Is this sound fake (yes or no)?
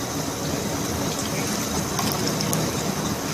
no